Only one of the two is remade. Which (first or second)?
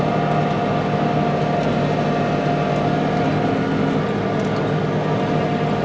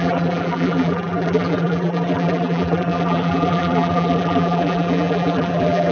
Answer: second